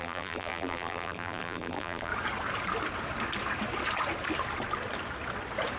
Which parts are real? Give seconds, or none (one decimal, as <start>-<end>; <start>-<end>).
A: 2.1-5.8